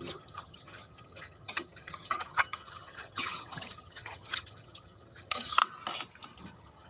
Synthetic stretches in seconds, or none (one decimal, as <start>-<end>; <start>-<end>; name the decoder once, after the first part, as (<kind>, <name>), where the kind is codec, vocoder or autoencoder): 0.0-5.6 (vocoder, HiFi-GAN); 6.4-6.9